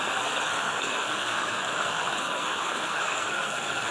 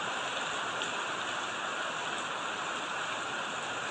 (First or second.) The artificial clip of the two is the first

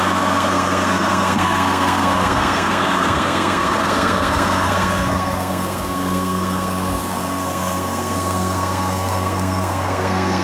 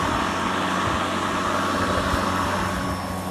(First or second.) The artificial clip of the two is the first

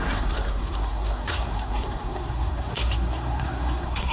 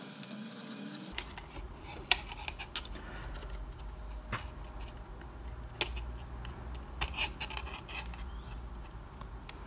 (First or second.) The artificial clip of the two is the first